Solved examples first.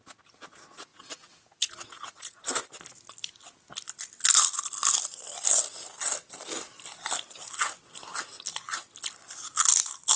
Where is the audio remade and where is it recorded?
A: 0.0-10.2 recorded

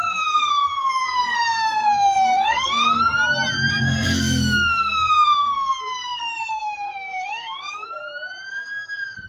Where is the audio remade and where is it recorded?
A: 0.0-3.1 remade; 3.1-3.7 recorded; 3.7-8.0 remade; 8.0-8.5 recorded; 8.5-9.3 remade

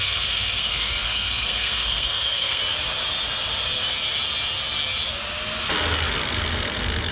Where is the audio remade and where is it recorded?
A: 0.0-2.6 remade; 2.6-7.1 recorded

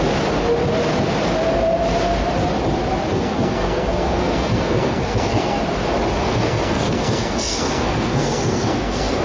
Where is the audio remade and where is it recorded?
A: 0.0-3.1 recorded; 3.1-5.6 remade; 5.6-6.2 recorded; 6.2-9.2 remade